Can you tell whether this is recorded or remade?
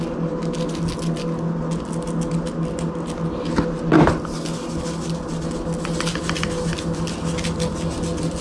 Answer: recorded